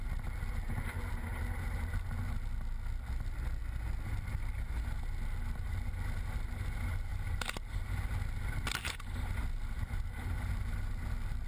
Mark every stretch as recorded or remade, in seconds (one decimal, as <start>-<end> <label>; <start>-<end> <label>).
0.0-11.5 recorded